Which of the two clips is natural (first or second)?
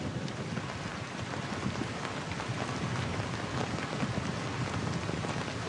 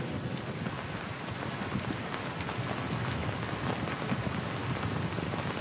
second